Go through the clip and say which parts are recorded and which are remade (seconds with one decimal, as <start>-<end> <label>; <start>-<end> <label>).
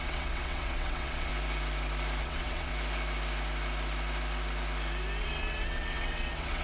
0.0-1.3 remade; 1.3-2.2 recorded; 2.2-2.7 remade; 2.7-5.2 recorded; 5.2-6.6 remade